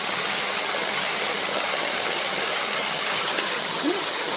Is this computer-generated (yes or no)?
yes